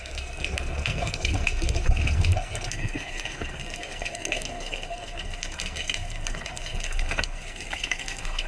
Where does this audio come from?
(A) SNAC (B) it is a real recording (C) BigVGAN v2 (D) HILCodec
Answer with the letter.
A